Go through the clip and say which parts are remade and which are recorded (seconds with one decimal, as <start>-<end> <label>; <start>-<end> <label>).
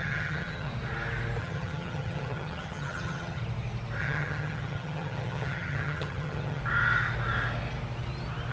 0.0-0.7 remade; 0.7-1.4 recorded; 1.4-3.4 remade; 3.4-4.0 recorded; 4.0-6.6 remade; 6.6-8.5 recorded